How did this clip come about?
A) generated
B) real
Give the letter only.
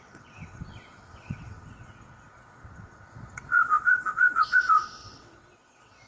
A